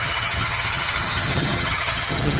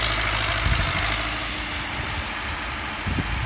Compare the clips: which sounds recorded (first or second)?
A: second